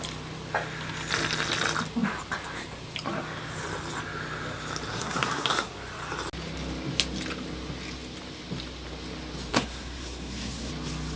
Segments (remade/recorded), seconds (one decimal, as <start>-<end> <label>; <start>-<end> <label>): 0.0-4.9 recorded; 4.9-5.7 remade; 5.7-9.5 recorded; 9.5-10.7 remade; 10.7-11.2 recorded